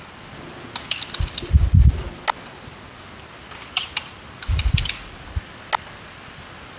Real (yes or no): yes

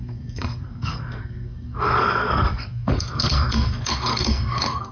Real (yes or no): no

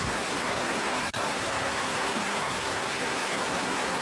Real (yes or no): no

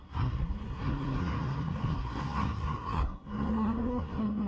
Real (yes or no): no